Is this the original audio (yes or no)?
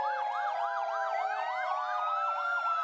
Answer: yes